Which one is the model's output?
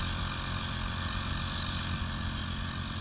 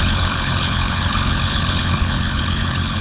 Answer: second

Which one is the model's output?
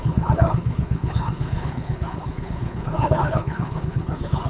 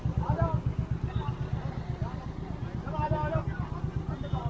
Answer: first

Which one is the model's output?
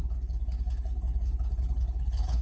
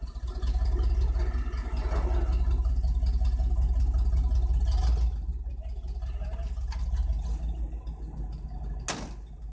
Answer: first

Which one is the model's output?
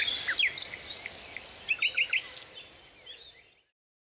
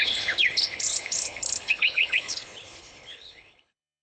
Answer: second